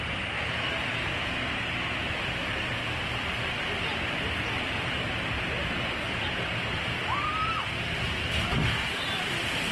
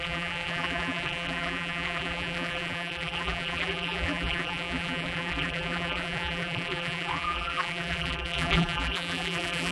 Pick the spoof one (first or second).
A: second